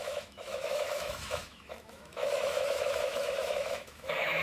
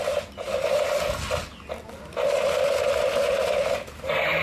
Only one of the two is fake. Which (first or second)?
first